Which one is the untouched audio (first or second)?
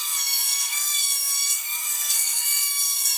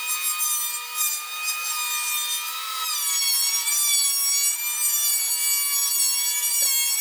second